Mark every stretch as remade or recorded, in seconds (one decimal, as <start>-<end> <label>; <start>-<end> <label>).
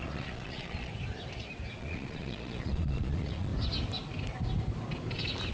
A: 0.0-0.9 remade; 0.9-1.8 recorded; 1.8-3.5 remade; 3.5-5.5 recorded